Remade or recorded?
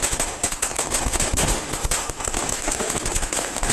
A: remade